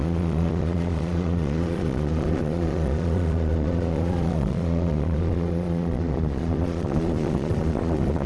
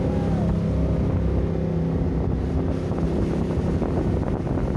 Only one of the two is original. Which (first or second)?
second